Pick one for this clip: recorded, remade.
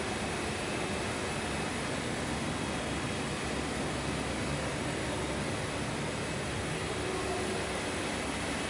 recorded